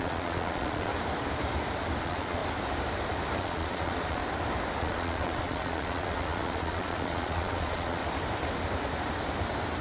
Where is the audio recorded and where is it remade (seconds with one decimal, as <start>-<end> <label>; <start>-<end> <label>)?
0.0-0.9 remade; 0.9-2.0 recorded; 2.0-2.4 remade; 2.4-3.4 recorded; 3.4-4.2 remade; 4.2-4.8 recorded; 4.8-8.0 remade; 8.0-9.8 recorded